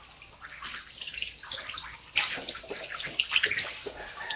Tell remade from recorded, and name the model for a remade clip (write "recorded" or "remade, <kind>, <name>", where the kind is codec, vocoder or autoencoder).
recorded